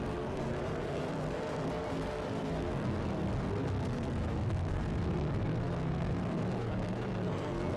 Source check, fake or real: fake